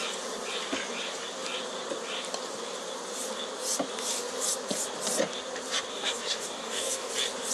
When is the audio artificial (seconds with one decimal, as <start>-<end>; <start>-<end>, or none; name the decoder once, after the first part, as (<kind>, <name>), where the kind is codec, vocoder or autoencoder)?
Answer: 5.9-7.1 (codec, DAC)